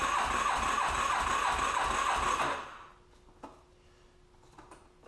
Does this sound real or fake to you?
real